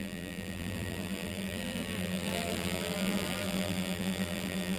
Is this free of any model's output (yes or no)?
no